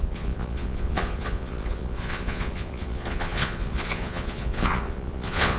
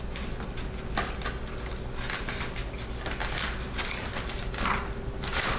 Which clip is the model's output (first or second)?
first